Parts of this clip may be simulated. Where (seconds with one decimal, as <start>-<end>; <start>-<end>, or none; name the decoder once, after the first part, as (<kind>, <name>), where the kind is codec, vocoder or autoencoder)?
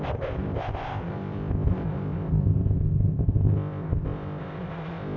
0.0-5.2 (codec, ZipCodec)